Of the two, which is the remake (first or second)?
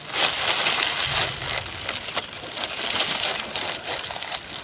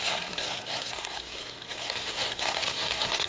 second